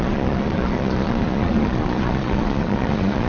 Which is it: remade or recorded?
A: remade